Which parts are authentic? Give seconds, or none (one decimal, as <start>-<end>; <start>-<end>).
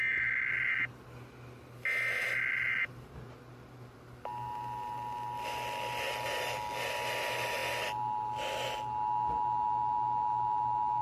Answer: 0.0-11.0